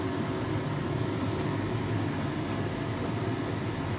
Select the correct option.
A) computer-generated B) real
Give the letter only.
B